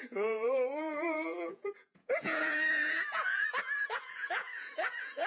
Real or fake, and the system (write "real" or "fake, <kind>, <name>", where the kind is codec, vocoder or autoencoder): fake, vocoder, Vocos